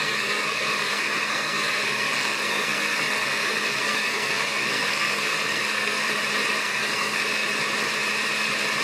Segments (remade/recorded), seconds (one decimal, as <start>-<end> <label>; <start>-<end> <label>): 0.0-6.0 remade; 6.0-6.5 recorded; 6.5-7.2 remade; 7.2-8.8 recorded